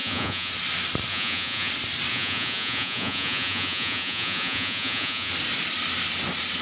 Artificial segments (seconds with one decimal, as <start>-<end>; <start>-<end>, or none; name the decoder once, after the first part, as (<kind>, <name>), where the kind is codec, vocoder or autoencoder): 0.0-0.5 (vocoder, Vocos); 1.1-1.7; 2.1-5.3